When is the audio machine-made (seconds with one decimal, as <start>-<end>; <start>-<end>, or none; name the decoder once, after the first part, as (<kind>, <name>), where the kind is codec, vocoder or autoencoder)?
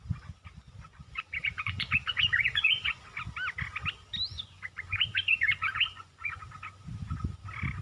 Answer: 0.9-3.0 (vocoder, Vocos); 4.3-6.4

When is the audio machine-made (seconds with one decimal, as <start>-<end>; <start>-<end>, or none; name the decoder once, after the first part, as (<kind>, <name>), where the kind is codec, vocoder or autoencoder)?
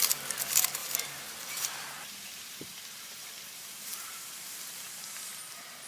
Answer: 0.8-4.3 (vocoder, BigVGAN v2)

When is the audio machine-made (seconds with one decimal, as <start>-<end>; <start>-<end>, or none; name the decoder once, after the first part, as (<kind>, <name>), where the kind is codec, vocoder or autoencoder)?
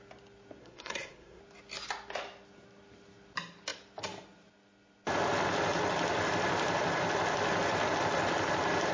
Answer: 0.6-1.4 (codec, SNAC)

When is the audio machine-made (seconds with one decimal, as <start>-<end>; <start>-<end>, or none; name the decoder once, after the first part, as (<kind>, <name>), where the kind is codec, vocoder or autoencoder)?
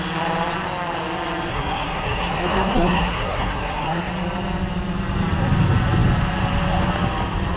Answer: 1.5-4.1 (codec, SNAC)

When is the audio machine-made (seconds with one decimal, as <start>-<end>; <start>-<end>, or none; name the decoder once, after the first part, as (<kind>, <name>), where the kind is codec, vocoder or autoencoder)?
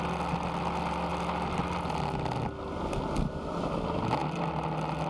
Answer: none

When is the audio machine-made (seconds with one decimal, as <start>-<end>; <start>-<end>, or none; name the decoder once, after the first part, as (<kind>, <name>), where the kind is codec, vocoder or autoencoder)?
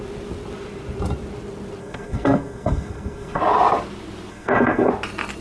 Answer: 1.8-3.4 (codec, SNAC); 4.3-4.9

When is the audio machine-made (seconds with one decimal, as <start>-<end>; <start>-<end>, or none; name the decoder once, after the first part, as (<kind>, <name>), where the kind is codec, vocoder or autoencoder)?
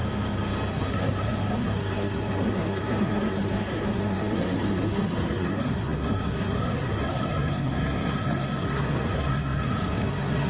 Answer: 0.7-10.5 (codec, SNAC)